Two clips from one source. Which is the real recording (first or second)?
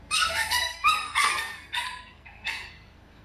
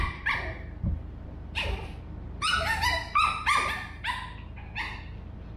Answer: second